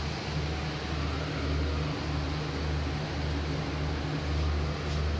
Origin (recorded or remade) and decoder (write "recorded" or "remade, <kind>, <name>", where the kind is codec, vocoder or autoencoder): recorded